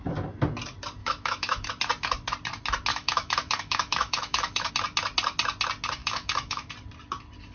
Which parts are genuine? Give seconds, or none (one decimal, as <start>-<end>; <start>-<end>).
0.0-1.0; 1.7-2.9; 4.7-6.0; 6.7-7.5